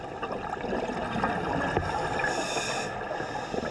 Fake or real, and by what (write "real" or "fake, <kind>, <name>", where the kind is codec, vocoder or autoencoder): real